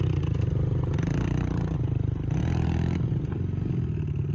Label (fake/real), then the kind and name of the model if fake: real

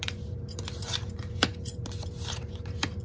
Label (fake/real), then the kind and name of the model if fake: fake, vocoder, BigVGAN v2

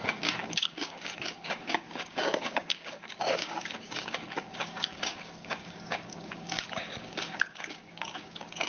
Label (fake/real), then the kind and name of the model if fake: fake, codec, DAC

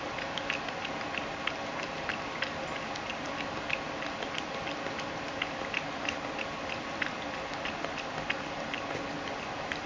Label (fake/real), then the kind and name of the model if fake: real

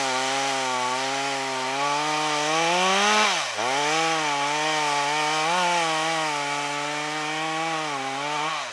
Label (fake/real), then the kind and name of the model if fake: real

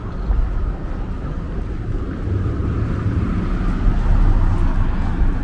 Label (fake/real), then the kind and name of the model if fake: real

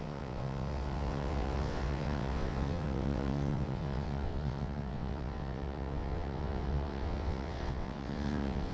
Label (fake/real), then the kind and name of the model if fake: fake, vocoder, WaveNeXt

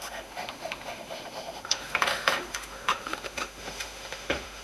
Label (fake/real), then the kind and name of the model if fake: fake, autoencoder, DAC-VAE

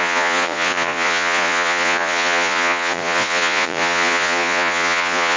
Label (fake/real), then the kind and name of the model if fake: fake, vocoder, Vocos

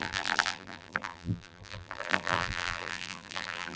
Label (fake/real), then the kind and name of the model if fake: fake, vocoder, BigVGAN v2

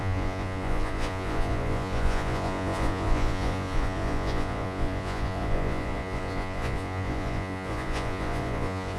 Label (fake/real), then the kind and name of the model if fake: fake, vocoder, Vocos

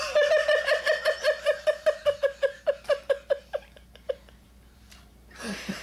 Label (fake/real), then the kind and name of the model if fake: fake, vocoder, BigVGAN v2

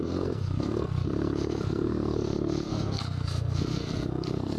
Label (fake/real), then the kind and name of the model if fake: fake, codec, SNAC